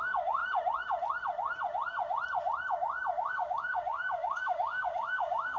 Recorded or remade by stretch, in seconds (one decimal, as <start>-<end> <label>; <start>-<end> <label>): 0.0-0.4 remade; 0.4-3.3 recorded; 3.3-5.6 remade